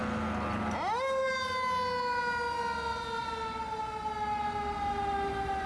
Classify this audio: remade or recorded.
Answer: recorded